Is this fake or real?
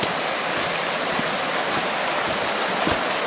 real